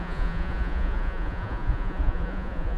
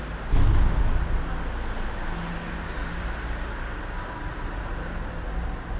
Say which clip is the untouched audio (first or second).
second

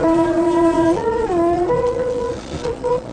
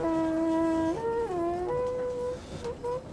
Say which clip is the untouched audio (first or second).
second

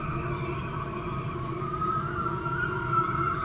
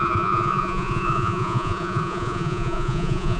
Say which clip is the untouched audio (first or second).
first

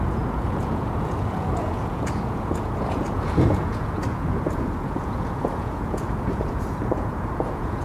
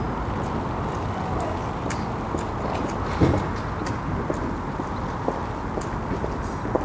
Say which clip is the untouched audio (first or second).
second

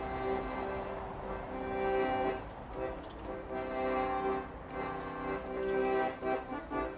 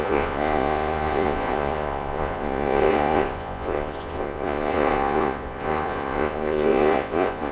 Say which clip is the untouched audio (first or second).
first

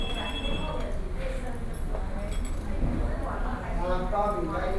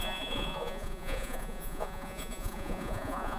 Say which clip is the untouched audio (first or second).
first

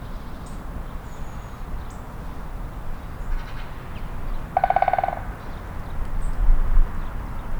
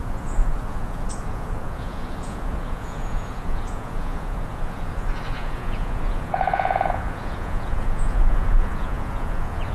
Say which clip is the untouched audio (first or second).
first